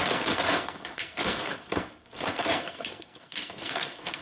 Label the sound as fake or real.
fake